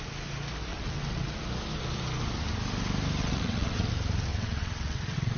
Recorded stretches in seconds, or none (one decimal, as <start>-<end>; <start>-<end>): 0.0-0.7; 1.4-3.2; 3.9-4.3